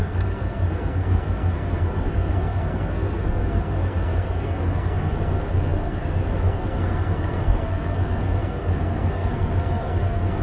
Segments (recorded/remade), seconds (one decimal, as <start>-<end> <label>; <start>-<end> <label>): 0.0-10.4 remade